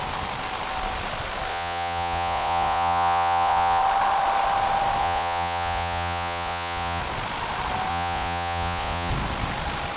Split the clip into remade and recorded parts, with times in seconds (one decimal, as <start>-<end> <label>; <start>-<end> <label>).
0.0-1.5 recorded; 1.5-3.8 remade; 3.8-5.0 recorded; 5.0-7.0 remade; 7.0-7.9 recorded; 7.9-9.1 remade; 9.1-10.0 recorded